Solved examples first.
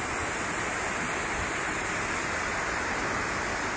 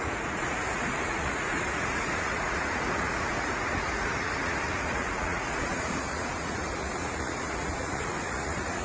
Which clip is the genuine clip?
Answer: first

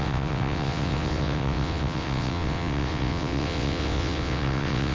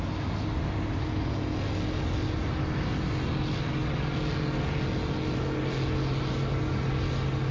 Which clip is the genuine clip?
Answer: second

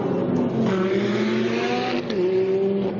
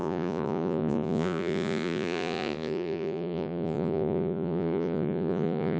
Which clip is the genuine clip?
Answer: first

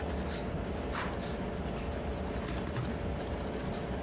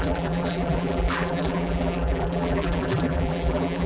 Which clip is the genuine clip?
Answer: first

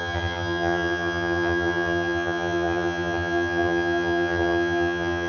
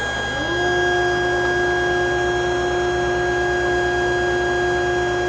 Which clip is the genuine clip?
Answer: second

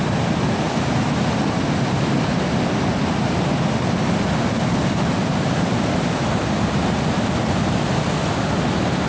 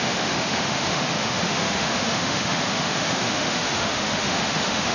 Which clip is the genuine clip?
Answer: first